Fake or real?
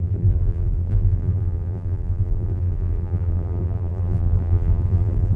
fake